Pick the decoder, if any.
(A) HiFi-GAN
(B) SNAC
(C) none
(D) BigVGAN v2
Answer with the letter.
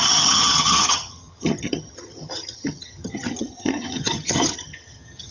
A